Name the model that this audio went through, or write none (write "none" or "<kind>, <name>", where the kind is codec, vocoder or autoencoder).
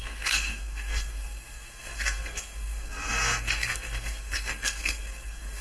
codec, SNAC